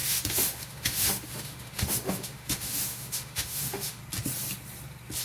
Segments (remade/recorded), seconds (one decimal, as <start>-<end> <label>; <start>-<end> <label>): 0.0-4.0 remade; 4.0-5.2 recorded